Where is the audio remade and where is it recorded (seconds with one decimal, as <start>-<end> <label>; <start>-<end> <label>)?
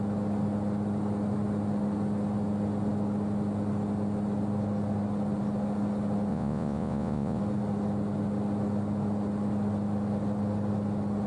0.0-6.3 recorded; 6.3-7.4 remade; 7.4-11.3 recorded